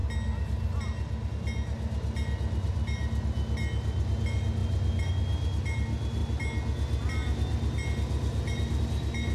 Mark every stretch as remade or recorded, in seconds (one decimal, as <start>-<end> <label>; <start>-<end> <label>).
0.0-9.3 recorded